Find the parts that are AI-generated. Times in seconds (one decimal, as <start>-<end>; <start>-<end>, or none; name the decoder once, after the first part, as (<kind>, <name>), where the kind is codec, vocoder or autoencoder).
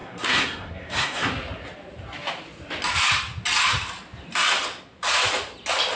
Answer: 0.0-1.3 (codec, SNAC)